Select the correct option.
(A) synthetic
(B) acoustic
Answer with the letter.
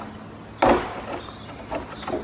B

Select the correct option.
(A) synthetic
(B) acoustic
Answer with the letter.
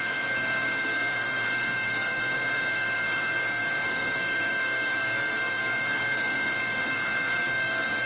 A